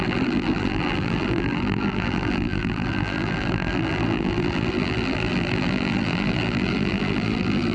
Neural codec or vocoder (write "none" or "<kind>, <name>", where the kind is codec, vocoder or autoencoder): vocoder, BigVGAN v2